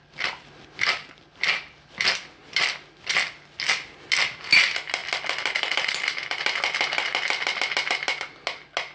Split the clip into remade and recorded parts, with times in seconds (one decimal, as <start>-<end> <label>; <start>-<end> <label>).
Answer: 0.0-8.9 recorded